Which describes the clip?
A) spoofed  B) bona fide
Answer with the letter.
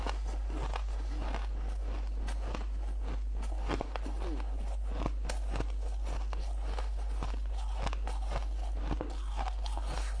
B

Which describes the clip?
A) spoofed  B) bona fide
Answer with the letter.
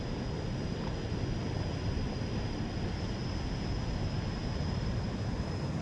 B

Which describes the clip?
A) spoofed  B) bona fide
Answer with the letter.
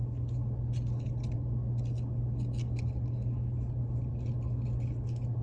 B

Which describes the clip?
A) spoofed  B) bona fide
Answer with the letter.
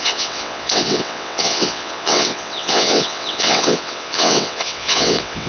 A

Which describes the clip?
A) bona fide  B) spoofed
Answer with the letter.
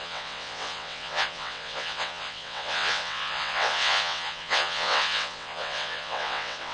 B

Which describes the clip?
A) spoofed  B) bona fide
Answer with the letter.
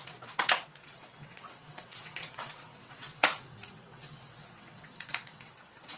A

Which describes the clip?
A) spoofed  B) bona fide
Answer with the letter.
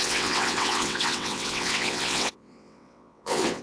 A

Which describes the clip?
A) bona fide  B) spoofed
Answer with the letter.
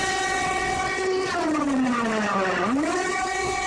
B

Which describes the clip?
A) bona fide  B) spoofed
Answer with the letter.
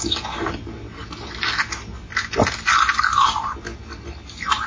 A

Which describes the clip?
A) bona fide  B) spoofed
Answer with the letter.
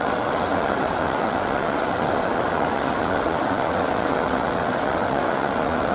B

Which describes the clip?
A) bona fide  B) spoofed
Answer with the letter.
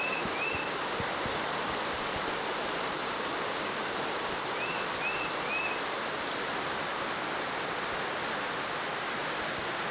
A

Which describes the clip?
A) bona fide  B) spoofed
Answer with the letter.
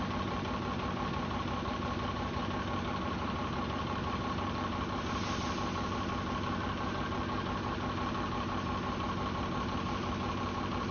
A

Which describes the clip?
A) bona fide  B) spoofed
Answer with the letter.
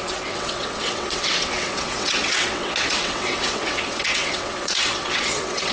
B